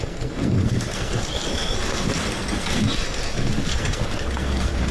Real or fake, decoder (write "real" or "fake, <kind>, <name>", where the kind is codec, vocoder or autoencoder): fake, codec, SNAC